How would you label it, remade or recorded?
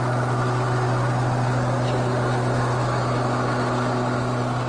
recorded